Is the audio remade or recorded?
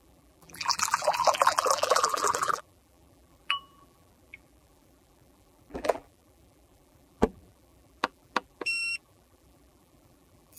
remade